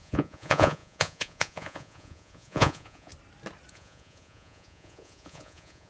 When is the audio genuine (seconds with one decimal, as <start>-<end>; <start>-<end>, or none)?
3.1-3.7